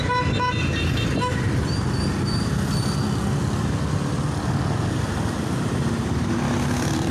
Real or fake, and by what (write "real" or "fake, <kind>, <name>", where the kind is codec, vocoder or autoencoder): real